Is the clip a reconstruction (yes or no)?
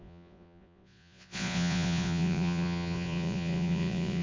yes